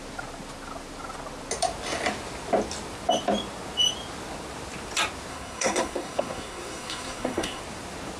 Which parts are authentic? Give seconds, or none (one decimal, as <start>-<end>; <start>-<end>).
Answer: 0.0-5.3; 7.6-8.2